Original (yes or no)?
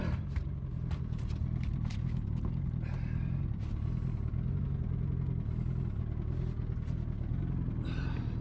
yes